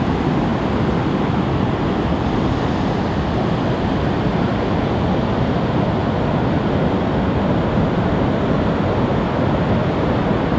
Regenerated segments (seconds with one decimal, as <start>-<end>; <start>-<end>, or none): none